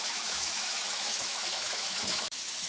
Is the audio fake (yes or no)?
yes